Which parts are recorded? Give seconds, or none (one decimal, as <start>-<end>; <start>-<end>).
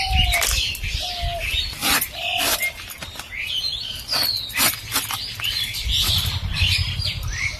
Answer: 0.0-7.6